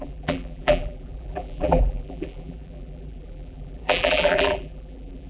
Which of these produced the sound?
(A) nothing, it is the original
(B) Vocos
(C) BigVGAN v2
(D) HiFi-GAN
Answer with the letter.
C